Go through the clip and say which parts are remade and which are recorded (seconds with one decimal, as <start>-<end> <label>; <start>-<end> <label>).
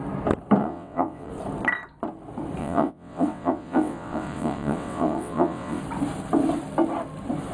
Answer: 0.0-0.6 recorded; 0.6-1.3 remade; 1.3-2.6 recorded; 2.6-5.8 remade; 5.8-7.5 recorded